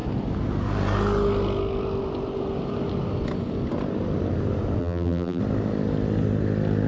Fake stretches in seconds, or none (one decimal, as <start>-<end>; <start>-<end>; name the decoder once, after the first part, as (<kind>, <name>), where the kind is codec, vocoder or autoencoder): 4.8-5.4 (vocoder, BigVGAN v2)